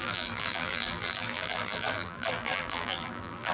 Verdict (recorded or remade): remade